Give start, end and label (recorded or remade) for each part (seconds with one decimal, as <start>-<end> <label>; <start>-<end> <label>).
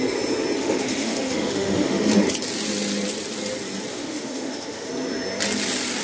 0.0-0.6 recorded; 0.6-2.1 remade; 2.1-3.9 recorded; 3.9-4.9 remade; 4.9-6.0 recorded